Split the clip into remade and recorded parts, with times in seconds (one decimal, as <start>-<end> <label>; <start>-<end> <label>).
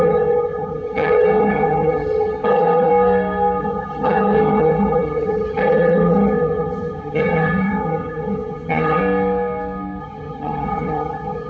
0.0-2.9 remade; 2.9-3.6 recorded; 3.6-9.0 remade; 9.0-10.0 recorded; 10.0-11.5 remade